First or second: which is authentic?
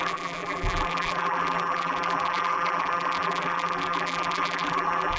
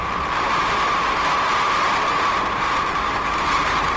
second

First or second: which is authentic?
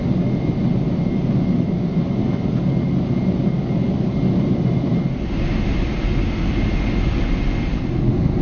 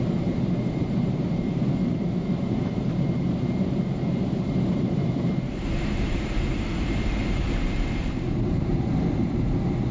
first